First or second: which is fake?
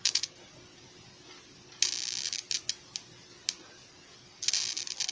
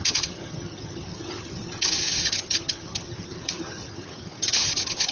second